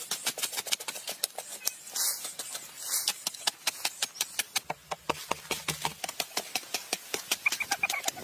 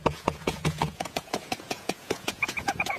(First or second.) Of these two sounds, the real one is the first